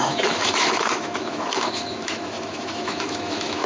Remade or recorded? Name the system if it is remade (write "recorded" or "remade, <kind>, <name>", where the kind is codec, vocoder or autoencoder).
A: remade, autoencoder, DAC-VAE